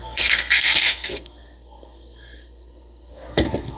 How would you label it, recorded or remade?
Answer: remade